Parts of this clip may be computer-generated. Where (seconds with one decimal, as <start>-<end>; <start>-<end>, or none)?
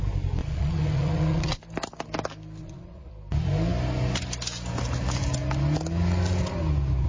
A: 0.4-1.6; 2.6-3.1